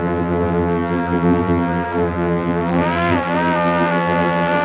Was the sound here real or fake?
fake